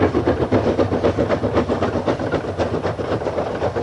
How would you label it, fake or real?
real